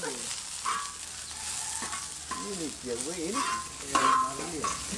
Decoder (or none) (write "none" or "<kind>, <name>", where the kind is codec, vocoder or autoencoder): none